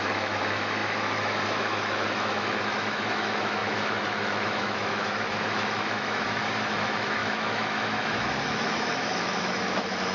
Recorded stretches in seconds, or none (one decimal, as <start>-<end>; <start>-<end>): none